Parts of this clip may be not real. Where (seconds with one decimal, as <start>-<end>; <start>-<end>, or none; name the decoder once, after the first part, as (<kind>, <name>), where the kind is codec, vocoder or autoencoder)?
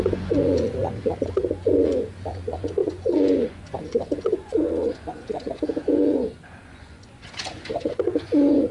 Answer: 0.0-8.7 (vocoder, Vocos)